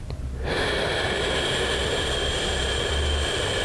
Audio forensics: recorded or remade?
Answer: recorded